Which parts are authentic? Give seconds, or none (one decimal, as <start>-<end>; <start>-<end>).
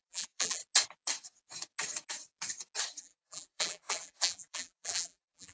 0.6-3.0